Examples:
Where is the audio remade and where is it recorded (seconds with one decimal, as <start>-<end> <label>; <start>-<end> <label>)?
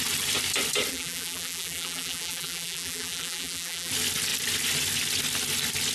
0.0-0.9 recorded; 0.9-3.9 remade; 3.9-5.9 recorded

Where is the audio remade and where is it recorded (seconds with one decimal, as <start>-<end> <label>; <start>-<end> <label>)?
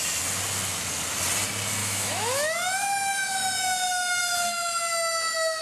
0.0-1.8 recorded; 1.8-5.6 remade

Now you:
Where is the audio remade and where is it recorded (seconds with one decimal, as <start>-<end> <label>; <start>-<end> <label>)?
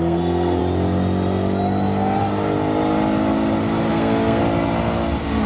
0.0-0.6 remade; 0.6-3.9 recorded; 3.9-4.4 remade; 4.4-5.5 recorded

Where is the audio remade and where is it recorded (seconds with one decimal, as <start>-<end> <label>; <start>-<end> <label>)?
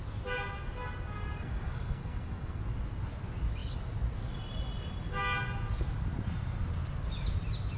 0.0-1.3 recorded; 1.3-2.6 remade; 2.6-7.8 recorded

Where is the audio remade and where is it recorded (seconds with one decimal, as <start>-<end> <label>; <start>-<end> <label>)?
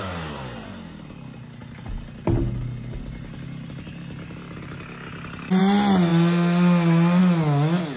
0.0-8.0 recorded